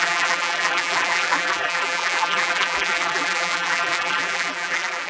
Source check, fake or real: fake